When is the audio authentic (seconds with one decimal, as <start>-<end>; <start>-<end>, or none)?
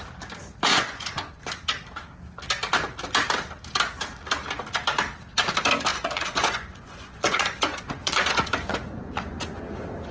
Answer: 0.0-0.7; 1.4-5.9; 9.6-10.1